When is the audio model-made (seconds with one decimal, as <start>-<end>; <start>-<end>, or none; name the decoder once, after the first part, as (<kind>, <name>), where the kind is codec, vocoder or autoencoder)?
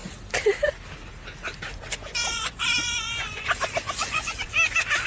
2.3-3.5 (vocoder, Vocos); 4.0-4.5